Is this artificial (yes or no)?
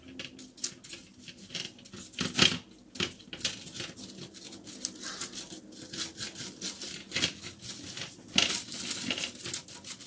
no